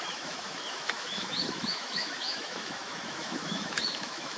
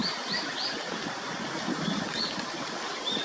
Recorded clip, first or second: second